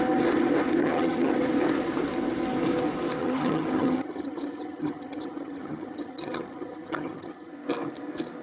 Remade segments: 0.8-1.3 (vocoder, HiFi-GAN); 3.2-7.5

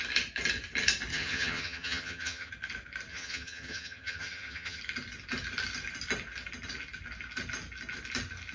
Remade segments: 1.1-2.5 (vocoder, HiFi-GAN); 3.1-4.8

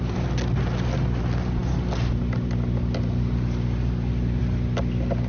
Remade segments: none

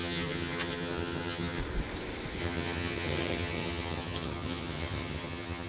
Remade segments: 0.0-1.6 (vocoder, HiFi-GAN); 2.4-5.7

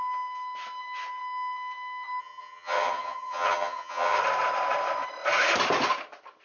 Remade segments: 2.2-4.2 (vocoder, HiFi-GAN)